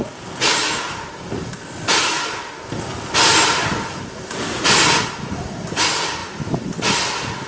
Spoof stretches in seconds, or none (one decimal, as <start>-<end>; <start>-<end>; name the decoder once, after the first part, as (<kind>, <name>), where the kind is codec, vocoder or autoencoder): 3.3-4.6 (vocoder, BigVGAN v2)